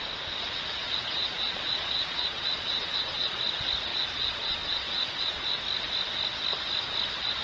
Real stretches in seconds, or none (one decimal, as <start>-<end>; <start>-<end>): 0.0-0.8; 3.4-3.9; 5.6-7.4